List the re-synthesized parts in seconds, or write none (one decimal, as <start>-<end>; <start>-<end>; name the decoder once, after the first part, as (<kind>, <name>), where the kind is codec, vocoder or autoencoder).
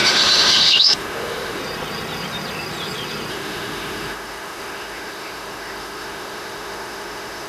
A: 0.0-1.6 (autoencoder, DAC-VAE); 3.3-7.5